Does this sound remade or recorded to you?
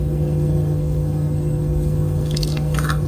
remade